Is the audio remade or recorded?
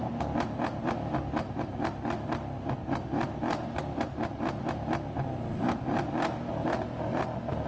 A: recorded